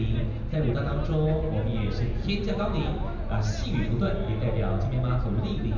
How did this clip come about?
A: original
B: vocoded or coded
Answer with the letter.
A